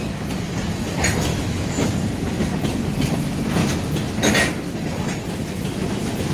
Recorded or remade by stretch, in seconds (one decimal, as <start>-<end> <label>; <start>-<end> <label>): 0.0-1.3 recorded; 1.3-1.9 remade; 1.9-6.3 recorded